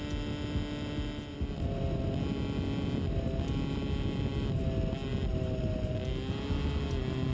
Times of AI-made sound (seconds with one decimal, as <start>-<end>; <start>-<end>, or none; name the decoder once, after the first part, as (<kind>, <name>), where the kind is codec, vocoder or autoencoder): none